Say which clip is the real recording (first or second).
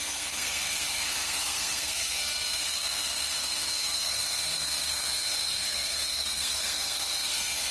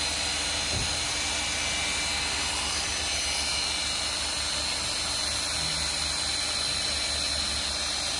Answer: second